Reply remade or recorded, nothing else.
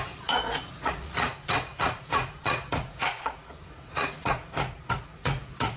remade